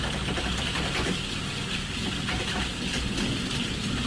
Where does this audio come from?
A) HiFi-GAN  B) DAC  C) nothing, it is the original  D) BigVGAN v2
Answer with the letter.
C